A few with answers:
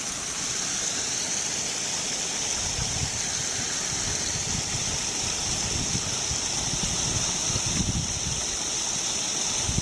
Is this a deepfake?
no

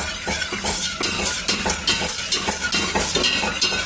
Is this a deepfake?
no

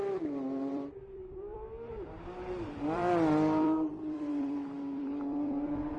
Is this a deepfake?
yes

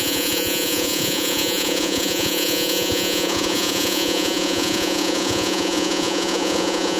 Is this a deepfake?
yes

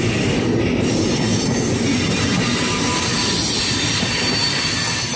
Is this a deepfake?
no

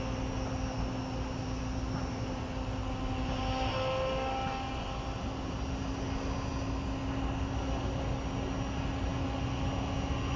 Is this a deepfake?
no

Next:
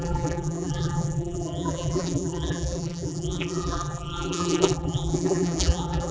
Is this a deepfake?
yes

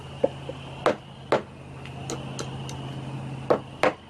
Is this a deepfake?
no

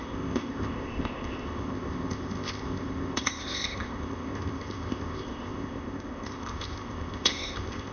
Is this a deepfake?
yes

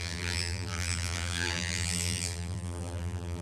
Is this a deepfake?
yes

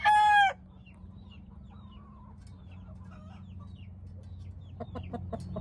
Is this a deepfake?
no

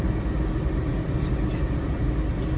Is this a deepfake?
no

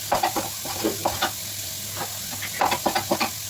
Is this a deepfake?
no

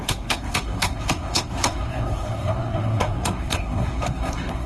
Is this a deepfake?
yes